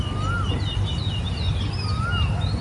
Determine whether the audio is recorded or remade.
recorded